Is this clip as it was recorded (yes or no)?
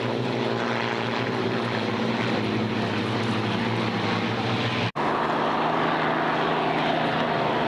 yes